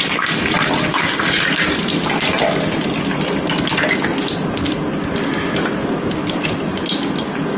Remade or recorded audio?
recorded